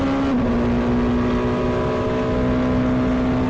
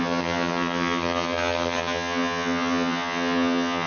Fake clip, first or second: second